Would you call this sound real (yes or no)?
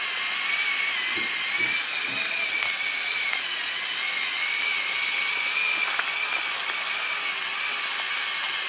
yes